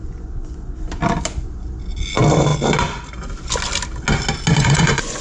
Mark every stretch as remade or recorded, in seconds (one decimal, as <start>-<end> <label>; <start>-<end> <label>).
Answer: 0.0-0.7 remade; 0.7-4.5 recorded; 4.5-5.2 remade